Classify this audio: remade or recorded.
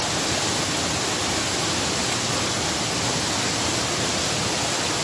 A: recorded